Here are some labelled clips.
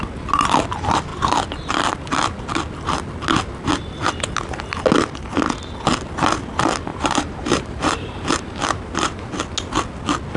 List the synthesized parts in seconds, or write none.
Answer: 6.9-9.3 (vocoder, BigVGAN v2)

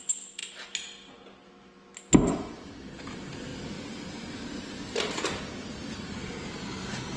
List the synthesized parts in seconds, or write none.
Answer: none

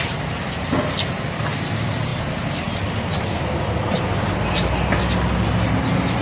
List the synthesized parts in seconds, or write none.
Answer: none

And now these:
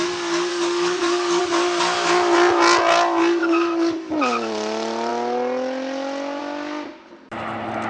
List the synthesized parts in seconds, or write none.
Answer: 0.5-1.4 (codec, DAC); 3.4-4.1

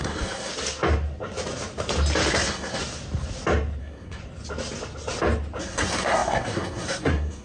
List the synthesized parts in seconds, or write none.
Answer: 0.0-0.5 (codec, SNAC); 2.3-2.8; 3.8-4.2; 5.6-7.4

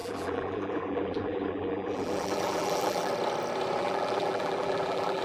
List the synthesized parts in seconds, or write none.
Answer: 0.0-3.1 (vocoder, BigVGAN v2); 3.8-5.2

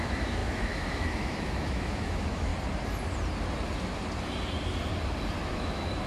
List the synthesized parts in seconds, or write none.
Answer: 0.0-2.5 (autoencoder, DAC-VAE); 5.5-6.1